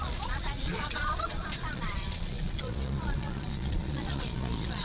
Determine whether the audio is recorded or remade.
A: remade